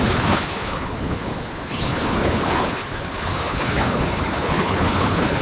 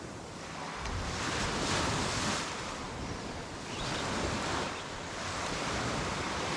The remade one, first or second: first